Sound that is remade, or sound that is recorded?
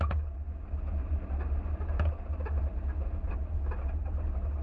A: recorded